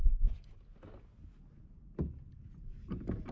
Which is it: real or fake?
real